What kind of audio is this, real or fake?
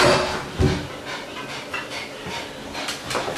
real